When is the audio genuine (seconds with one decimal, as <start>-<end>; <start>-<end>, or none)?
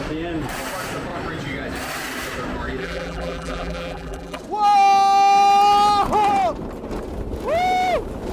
0.0-2.8; 4.4-8.3